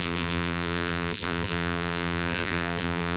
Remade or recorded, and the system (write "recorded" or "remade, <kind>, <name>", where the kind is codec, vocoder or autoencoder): remade, vocoder, BigVGAN v2